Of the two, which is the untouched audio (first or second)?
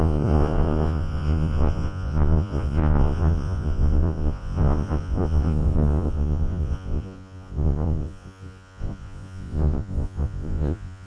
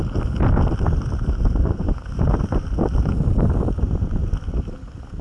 second